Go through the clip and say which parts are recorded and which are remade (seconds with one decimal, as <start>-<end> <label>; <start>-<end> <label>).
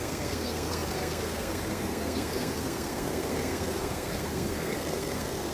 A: 0.0-5.5 remade